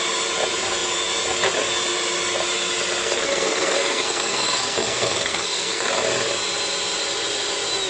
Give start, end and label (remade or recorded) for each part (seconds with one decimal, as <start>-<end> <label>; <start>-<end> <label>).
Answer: 0.0-3.0 recorded; 3.0-5.9 remade; 5.9-7.9 recorded